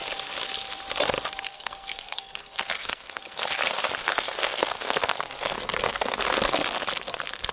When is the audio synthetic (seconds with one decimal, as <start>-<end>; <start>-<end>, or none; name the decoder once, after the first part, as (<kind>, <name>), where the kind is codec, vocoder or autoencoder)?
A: 1.5-3.4 (codec, SNAC); 4.0-6.2